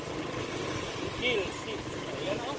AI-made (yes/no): no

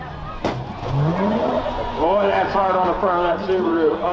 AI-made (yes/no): yes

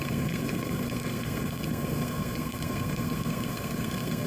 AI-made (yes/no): yes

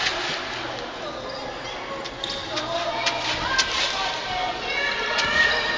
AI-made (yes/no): no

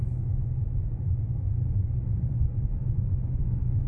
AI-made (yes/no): yes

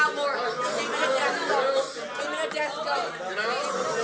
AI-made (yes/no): no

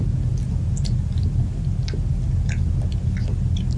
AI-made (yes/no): no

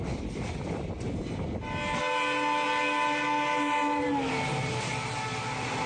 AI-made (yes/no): no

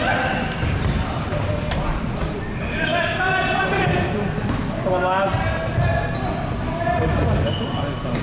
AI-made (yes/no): no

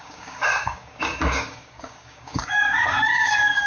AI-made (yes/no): yes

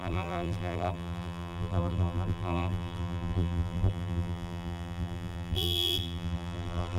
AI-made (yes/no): yes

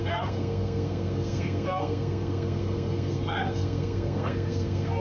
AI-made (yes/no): yes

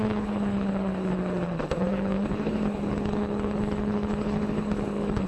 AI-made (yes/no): yes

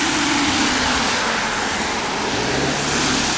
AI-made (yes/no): no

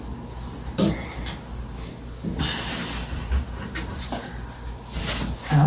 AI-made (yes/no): no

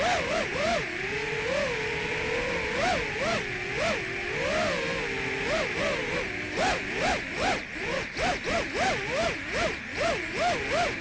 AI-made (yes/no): no